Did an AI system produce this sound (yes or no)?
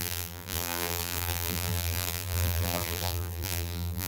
yes